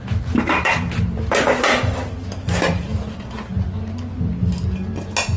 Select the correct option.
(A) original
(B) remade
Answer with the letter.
A